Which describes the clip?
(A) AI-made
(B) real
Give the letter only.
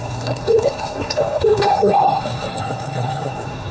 A